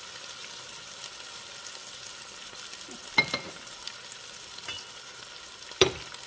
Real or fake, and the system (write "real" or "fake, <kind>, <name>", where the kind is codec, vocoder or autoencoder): real